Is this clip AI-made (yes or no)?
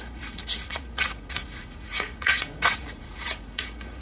yes